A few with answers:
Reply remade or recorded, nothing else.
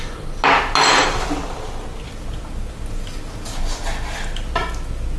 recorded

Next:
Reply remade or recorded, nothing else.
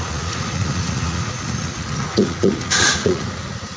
remade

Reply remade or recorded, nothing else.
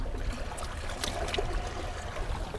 recorded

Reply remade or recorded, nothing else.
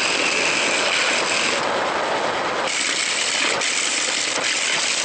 recorded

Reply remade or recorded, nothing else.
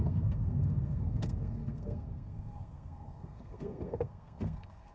remade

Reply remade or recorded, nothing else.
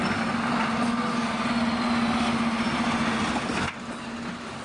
recorded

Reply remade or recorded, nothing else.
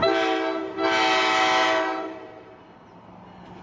recorded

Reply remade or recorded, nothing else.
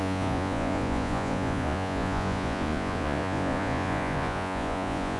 remade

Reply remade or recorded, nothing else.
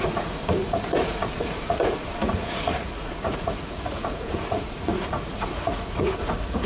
remade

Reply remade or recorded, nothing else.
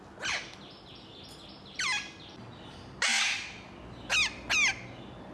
recorded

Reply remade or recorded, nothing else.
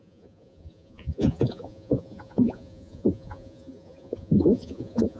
remade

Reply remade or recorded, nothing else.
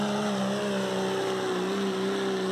recorded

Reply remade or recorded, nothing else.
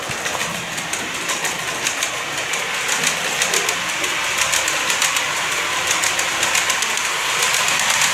recorded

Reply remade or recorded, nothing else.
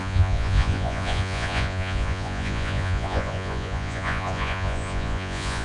remade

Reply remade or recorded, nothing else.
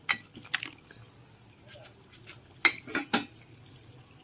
recorded